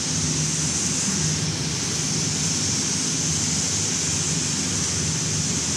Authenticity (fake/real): real